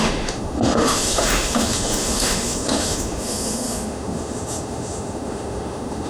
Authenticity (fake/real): fake